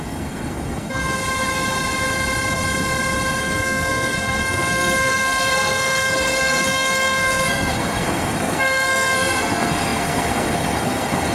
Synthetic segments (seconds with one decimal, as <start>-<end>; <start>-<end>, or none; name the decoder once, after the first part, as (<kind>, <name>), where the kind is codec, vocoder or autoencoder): 0.0-1.2 (codec, SNAC); 3.4-11.3